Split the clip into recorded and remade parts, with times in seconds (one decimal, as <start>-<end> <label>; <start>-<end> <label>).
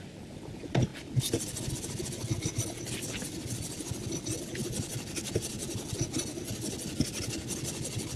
0.0-0.9 recorded; 0.9-1.7 remade; 1.7-8.2 recorded